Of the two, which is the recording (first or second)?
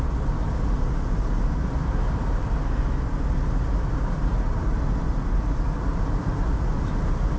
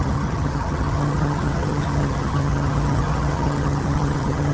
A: first